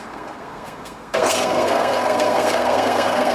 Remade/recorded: remade